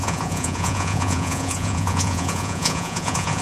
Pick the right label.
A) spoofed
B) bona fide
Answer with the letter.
A